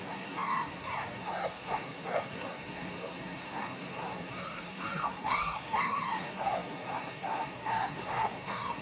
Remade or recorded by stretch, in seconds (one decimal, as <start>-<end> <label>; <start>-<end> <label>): 0.0-8.8 remade